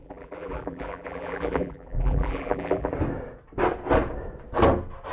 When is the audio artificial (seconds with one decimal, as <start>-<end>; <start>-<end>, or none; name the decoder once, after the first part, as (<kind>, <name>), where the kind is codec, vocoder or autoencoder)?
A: 0.0-2.9 (vocoder, BigVGAN v2)